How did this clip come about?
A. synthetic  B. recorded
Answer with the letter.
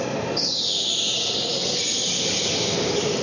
B